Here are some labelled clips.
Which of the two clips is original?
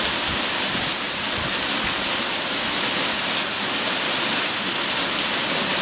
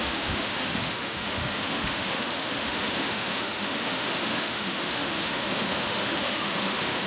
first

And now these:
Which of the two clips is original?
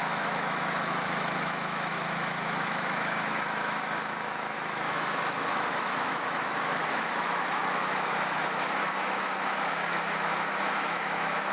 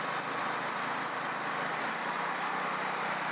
second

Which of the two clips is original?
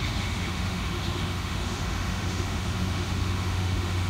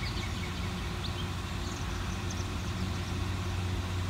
second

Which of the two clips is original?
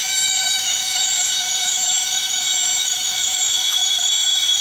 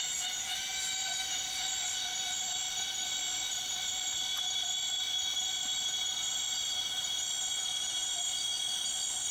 second